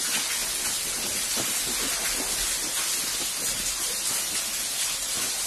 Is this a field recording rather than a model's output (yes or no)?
yes